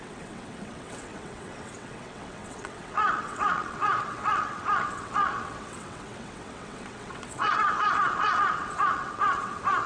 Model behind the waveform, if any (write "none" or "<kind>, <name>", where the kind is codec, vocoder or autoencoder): vocoder, WaveNeXt